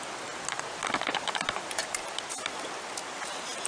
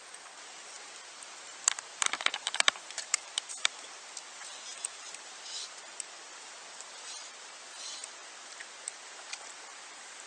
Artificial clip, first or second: second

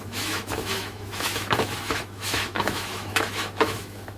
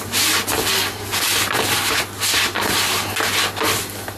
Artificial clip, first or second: first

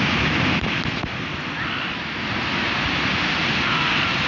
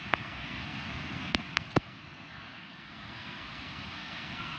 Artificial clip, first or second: second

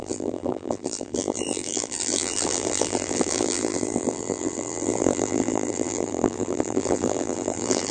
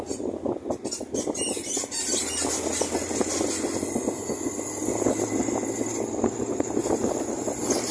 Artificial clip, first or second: first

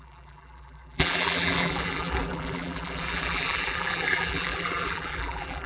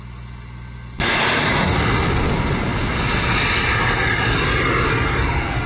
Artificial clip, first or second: first